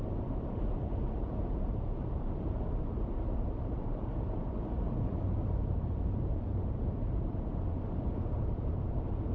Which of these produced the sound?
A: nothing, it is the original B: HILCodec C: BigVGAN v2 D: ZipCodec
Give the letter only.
C